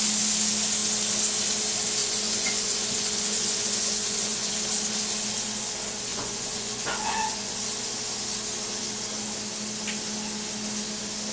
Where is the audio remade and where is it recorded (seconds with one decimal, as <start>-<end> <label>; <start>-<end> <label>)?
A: 0.0-2.0 recorded; 2.0-4.5 remade; 4.5-6.1 recorded; 6.1-7.5 remade; 7.5-11.3 recorded